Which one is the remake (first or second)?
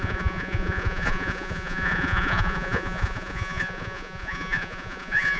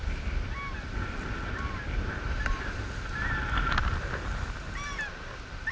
first